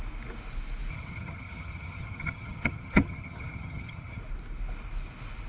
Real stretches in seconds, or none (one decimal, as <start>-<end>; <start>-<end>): 0.0-0.9; 4.2-5.5